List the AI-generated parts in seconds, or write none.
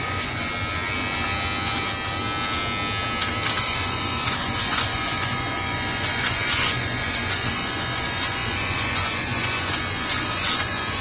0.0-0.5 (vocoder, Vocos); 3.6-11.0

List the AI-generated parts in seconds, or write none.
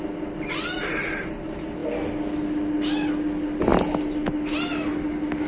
none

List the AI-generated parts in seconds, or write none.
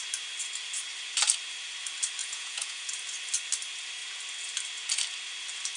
2.2-2.9 (vocoder, Vocos)